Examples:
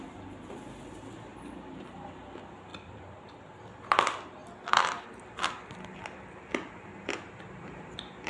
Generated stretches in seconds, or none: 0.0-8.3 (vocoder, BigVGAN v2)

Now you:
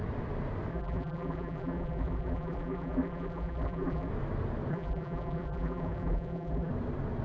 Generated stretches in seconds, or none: 0.7-4.1 (vocoder, BigVGAN v2); 4.7-6.7

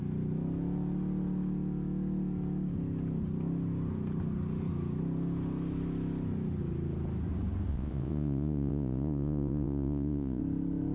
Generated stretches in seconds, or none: 7.7-10.4 (vocoder, Vocos)